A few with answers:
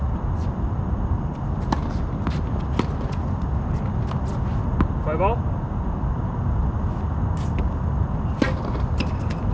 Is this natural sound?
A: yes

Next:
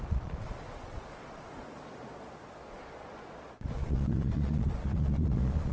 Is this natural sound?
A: no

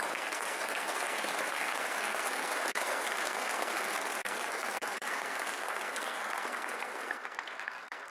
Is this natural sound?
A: no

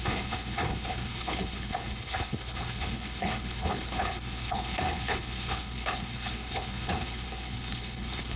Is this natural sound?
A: no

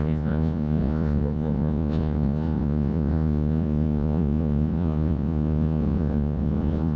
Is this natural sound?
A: no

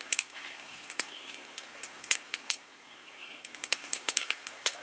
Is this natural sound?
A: no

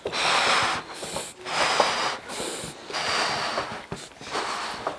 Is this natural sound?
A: yes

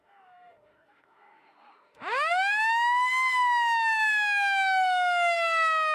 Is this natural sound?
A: no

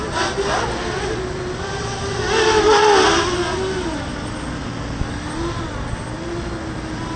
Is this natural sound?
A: yes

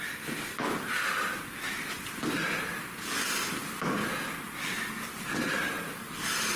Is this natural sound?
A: no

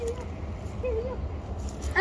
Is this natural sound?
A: yes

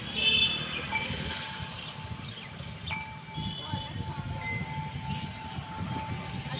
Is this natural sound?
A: yes